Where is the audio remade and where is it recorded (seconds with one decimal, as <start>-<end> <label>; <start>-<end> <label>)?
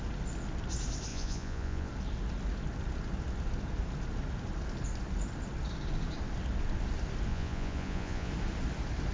0.0-1.1 recorded; 1.1-1.9 remade; 1.9-7.3 recorded; 7.3-8.3 remade; 8.3-9.1 recorded